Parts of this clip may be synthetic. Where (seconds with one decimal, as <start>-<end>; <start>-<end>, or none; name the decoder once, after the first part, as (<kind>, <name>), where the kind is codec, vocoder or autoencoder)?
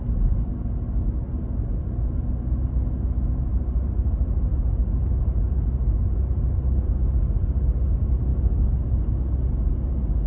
none